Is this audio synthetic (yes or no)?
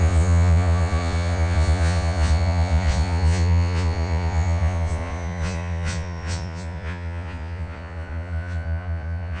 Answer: yes